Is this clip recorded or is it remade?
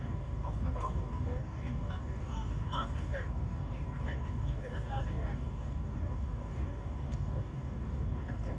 remade